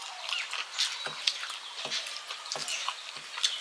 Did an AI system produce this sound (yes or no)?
no